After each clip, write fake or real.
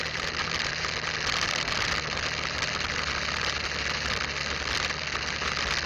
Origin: real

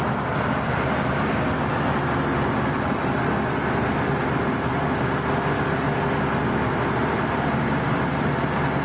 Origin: real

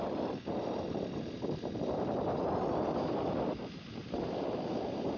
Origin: real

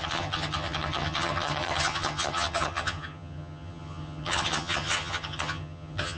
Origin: fake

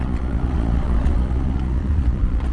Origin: fake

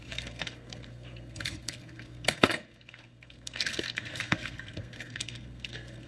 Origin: fake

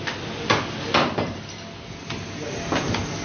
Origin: real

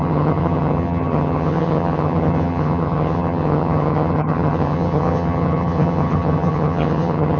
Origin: fake